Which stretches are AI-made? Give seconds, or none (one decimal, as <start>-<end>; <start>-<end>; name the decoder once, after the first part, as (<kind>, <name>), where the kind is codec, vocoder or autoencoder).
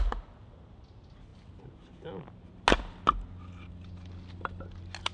none